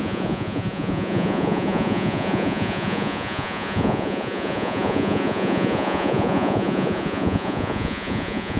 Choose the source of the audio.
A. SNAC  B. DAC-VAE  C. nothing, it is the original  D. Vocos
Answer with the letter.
D